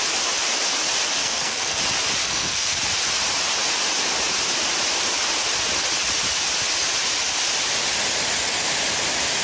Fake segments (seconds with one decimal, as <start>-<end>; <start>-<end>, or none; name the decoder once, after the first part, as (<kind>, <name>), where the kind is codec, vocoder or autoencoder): 1.2-1.8 (codec, SNAC); 2.2-2.8